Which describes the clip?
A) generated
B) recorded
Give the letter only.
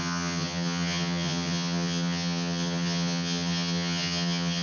A